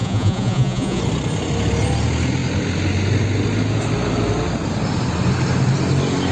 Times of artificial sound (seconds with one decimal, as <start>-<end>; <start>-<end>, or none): 0.0-1.0